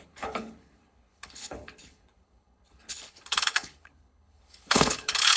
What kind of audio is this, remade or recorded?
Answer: remade